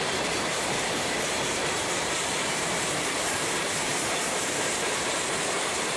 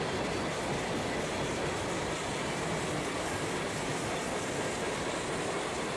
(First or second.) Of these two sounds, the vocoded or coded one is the first